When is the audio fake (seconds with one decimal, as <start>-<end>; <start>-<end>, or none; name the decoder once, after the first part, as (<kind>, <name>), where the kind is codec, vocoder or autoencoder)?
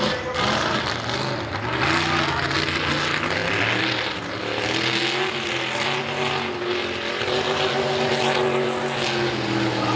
none